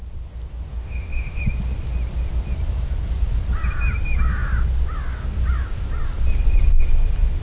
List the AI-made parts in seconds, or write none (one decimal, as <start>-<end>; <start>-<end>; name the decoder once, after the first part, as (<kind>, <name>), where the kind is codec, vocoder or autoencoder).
0.7-1.4 (autoencoder, DAC-VAE)